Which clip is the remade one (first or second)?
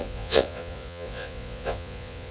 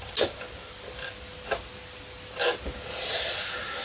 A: first